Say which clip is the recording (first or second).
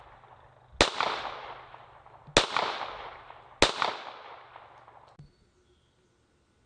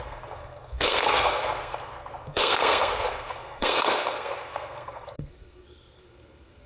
first